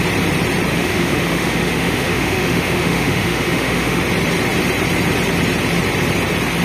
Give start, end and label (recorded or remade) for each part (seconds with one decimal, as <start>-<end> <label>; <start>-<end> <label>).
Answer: 0.0-0.7 recorded; 0.7-4.0 remade; 4.0-6.6 recorded